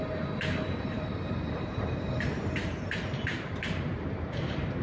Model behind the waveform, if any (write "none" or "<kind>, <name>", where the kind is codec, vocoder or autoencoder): vocoder, BigVGAN v2